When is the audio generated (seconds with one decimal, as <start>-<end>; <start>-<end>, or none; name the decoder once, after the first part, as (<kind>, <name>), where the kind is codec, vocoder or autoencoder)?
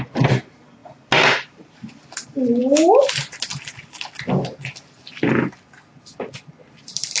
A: none